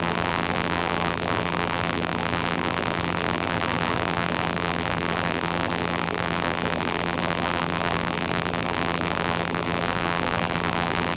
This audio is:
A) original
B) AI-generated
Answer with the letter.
B